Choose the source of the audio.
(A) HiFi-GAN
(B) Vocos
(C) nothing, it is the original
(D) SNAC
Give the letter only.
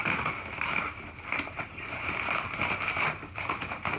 C